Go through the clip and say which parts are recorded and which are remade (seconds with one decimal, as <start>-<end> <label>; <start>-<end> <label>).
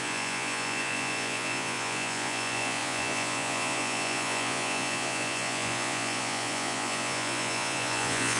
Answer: 0.0-8.4 remade